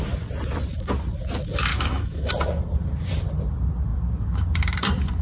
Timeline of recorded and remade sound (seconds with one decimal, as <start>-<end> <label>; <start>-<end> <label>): 0.0-1.7 recorded; 1.7-2.3 remade; 2.3-5.2 recorded